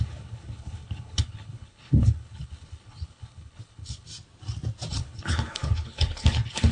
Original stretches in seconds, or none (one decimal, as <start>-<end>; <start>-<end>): 4.1-4.9